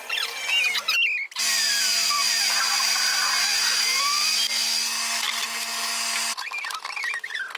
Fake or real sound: real